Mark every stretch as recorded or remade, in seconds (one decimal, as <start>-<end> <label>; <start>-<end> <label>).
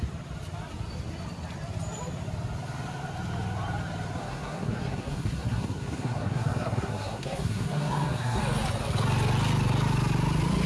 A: 0.0-4.2 recorded; 4.2-8.4 remade; 8.4-10.7 recorded